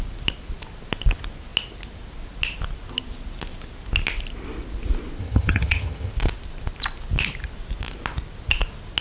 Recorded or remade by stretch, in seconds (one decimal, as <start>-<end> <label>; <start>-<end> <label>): 0.0-5.2 recorded; 5.2-6.1 remade; 6.1-9.0 recorded